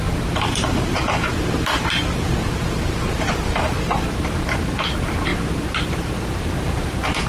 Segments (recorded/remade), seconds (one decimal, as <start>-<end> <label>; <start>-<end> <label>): 0.0-7.3 remade

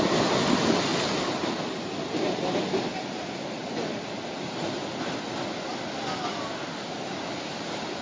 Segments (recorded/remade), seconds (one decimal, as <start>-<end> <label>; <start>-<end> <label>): 0.0-0.9 remade; 0.9-2.6 recorded; 2.6-8.0 remade

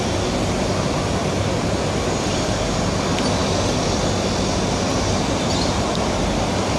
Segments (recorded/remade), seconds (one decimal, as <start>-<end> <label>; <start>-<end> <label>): 0.0-3.4 recorded; 3.4-4.1 remade; 4.1-6.8 recorded

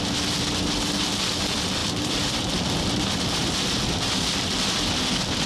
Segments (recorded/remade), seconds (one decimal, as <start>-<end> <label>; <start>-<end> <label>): 0.0-1.8 recorded; 1.8-5.1 remade; 5.1-5.5 recorded

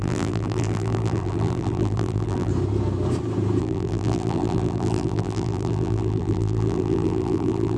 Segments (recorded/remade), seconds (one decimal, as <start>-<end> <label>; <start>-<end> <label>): 0.0-2.5 remade; 2.5-3.6 recorded; 3.6-7.8 remade

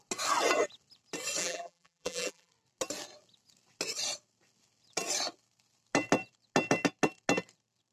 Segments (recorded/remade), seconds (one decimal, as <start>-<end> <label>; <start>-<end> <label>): 0.0-1.4 recorded; 1.4-2.5 remade; 2.5-7.9 recorded